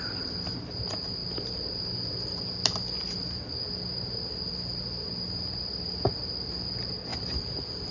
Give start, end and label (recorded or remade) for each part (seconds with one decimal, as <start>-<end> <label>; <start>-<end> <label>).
0.0-7.1 recorded; 7.1-7.9 remade